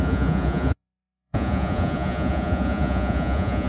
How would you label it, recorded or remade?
remade